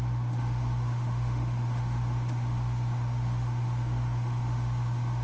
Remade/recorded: remade